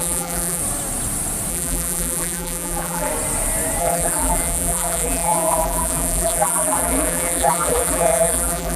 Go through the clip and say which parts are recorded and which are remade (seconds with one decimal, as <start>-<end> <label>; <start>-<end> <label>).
0.0-0.6 remade; 0.6-1.5 recorded; 1.5-3.1 remade; 3.1-3.8 recorded; 3.8-8.8 remade